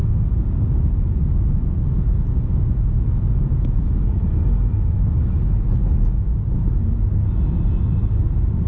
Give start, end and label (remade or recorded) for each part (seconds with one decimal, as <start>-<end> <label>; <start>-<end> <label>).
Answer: 0.0-1.2 remade; 1.2-1.6 recorded; 1.6-3.9 remade; 3.9-5.7 recorded; 5.7-6.7 remade; 6.7-8.7 recorded